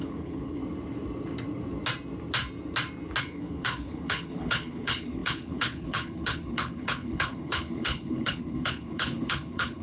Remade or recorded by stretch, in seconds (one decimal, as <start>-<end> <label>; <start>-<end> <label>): 0.0-0.6 remade; 0.6-3.2 recorded; 3.2-9.8 remade

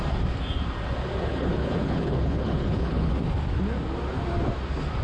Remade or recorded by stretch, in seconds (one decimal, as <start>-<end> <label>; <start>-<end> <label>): 0.0-1.3 recorded; 1.3-3.1 remade; 3.1-5.0 recorded

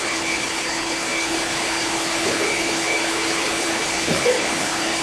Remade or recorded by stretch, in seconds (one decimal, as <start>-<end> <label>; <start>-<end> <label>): 0.0-5.0 remade

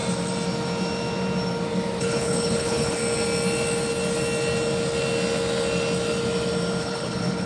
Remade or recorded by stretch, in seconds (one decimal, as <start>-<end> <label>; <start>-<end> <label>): 0.0-2.0 recorded; 2.0-3.0 remade; 3.0-6.8 recorded; 6.8-7.5 remade

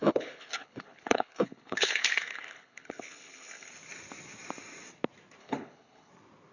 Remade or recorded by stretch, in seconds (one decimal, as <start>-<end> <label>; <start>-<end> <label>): 0.0-3.7 remade; 3.7-5.4 recorded; 5.4-6.1 remade; 6.1-6.5 recorded